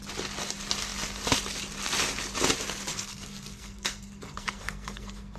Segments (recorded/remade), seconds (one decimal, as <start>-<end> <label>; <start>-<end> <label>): 0.0-2.9 recorded; 2.9-5.4 remade